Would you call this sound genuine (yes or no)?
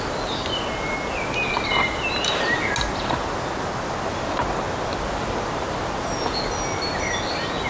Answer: yes